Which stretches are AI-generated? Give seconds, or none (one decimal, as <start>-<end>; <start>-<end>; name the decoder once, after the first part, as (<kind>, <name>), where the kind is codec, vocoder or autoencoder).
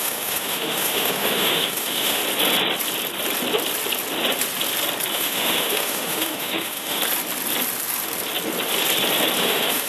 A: 0.0-2.2 (autoencoder, DAC-VAE); 5.1-7.0; 9.4-9.9